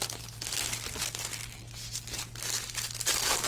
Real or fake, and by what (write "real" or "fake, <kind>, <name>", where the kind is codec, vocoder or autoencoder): real